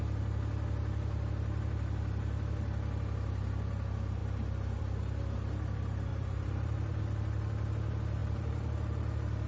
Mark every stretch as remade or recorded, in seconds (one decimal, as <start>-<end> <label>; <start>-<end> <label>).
0.0-6.1 recorded; 6.1-7.0 remade; 7.0-8.2 recorded; 8.2-9.5 remade

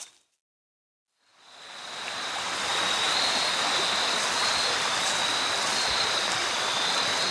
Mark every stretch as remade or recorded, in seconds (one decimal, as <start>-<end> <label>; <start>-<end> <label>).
0.0-7.3 recorded